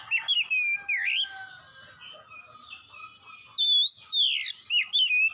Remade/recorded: recorded